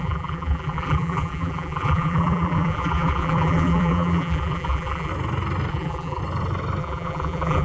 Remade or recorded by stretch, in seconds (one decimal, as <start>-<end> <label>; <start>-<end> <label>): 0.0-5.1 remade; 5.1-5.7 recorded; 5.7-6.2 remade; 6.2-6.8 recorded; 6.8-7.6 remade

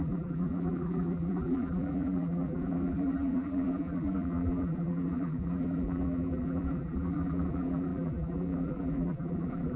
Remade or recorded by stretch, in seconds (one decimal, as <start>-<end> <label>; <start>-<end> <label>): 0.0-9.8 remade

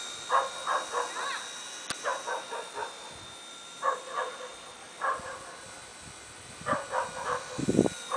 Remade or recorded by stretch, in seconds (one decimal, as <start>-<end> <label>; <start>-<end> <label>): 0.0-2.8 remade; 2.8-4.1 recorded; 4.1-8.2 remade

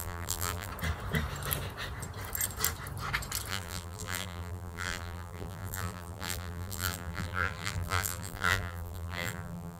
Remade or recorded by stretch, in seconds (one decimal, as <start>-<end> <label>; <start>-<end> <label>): 0.0-0.7 remade; 0.7-3.5 recorded; 3.5-9.8 remade

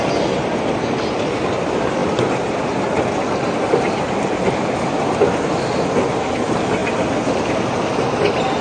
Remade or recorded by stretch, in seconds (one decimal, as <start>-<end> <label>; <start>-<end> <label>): 0.0-2.0 recorded; 2.0-4.0 remade; 4.0-8.6 recorded